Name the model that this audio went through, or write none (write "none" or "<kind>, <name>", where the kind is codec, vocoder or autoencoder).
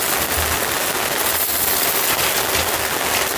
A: none